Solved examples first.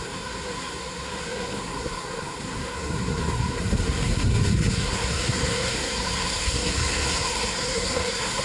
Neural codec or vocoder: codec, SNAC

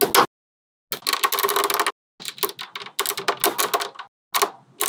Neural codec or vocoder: none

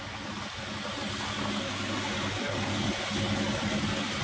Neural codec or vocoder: none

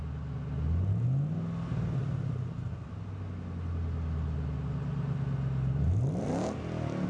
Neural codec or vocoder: none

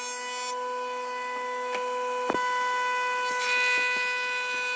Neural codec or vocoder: none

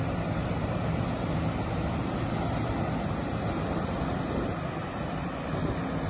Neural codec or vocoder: none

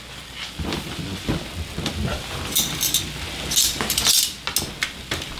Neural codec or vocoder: none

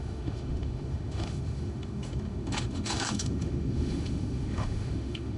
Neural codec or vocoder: autoencoder, DAC-VAE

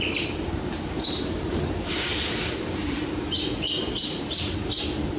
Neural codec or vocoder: vocoder, BigVGAN v2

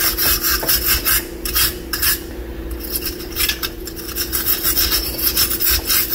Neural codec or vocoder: none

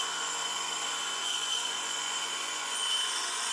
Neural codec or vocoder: vocoder, Vocos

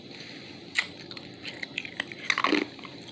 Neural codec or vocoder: none